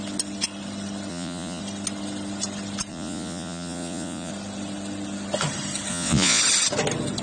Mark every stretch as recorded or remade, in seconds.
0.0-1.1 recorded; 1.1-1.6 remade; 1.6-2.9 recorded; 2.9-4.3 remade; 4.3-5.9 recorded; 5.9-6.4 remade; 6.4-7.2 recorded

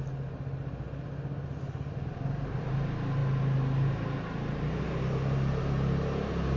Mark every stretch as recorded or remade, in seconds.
0.0-6.6 recorded

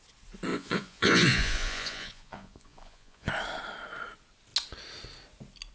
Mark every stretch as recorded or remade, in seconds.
0.0-0.5 recorded; 0.5-3.3 remade; 3.3-5.7 recorded